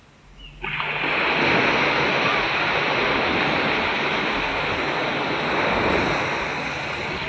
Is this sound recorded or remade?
recorded